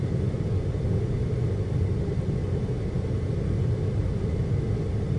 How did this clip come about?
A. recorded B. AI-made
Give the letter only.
A